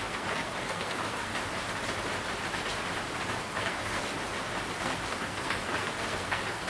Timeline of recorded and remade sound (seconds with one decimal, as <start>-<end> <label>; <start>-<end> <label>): 0.0-1.3 remade; 1.3-3.4 recorded; 3.4-4.1 remade; 4.1-4.8 recorded; 4.8-6.7 remade

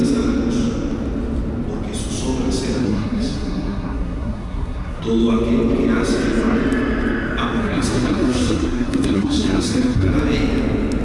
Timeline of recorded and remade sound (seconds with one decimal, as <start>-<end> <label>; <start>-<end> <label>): 0.0-2.8 recorded; 2.8-5.0 remade; 5.0-7.6 recorded; 7.6-10.1 remade; 10.1-11.0 recorded

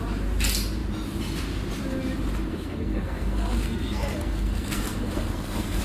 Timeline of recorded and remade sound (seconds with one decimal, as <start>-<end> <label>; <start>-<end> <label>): 0.0-2.5 recorded; 2.5-5.8 remade

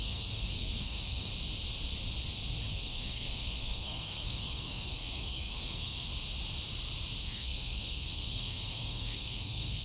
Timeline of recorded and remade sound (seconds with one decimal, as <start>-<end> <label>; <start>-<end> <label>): 0.0-1.3 remade; 1.3-2.7 recorded; 2.7-6.1 remade; 6.1-7.2 recorded; 7.2-9.8 remade

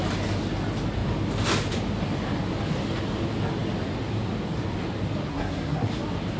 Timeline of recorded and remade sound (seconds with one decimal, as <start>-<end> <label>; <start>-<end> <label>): 0.0-5.3 recorded; 5.3-5.9 remade; 5.9-6.4 recorded

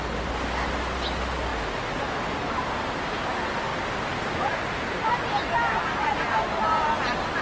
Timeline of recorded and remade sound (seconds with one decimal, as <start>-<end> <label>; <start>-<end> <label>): 0.0-7.4 recorded